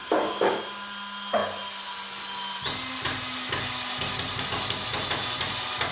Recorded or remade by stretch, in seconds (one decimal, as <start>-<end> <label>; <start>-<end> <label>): 0.0-0.6 remade; 0.6-5.9 recorded